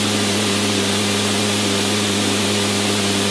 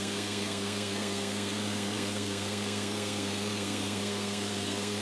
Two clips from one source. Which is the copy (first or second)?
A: second